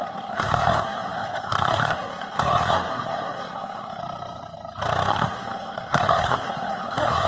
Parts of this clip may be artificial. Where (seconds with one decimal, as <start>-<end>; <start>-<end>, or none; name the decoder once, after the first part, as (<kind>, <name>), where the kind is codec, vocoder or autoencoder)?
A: 0.0-4.0 (codec, SNAC); 5.1-7.3